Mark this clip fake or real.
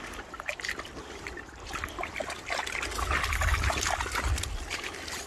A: real